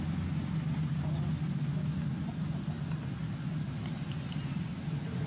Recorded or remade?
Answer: recorded